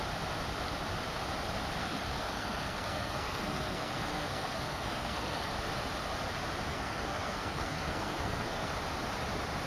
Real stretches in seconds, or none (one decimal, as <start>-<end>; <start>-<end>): 0.0-1.8; 5.5-6.7; 8.7-9.7